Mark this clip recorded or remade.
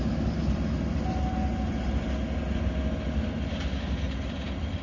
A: recorded